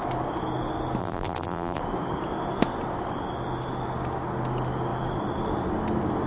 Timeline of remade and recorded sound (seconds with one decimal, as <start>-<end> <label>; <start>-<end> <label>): 0.0-1.0 recorded; 1.0-1.8 remade; 1.8-6.3 recorded

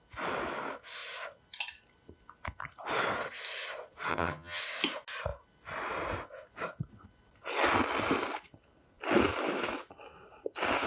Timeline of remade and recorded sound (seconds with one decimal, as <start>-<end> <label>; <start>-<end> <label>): 0.0-4.1 recorded; 4.1-4.6 remade; 4.6-10.9 recorded

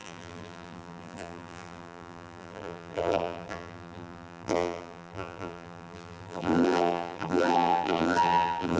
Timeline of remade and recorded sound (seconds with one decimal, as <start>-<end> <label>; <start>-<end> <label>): 0.0-8.8 remade

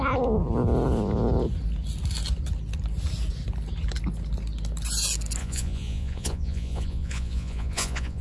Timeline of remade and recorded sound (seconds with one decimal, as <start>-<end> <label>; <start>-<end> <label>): 0.0-5.4 recorded; 5.4-8.2 remade

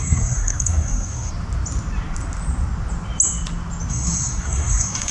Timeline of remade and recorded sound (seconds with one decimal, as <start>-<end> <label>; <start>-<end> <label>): 0.0-1.3 remade; 1.3-3.9 recorded; 3.9-5.1 remade